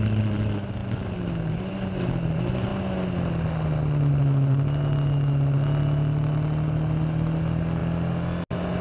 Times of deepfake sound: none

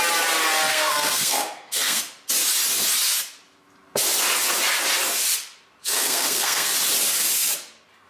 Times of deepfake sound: 0.7-2.0 (codec, SNAC); 5.8-6.7

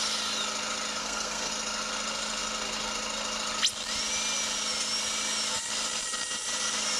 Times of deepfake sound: 1.0-1.5 (codec, SNAC)